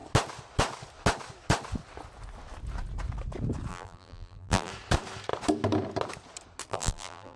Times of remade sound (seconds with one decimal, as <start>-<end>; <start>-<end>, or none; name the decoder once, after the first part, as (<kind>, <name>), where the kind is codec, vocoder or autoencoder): 3.7-4.7 (vocoder, BigVGAN v2); 6.7-7.4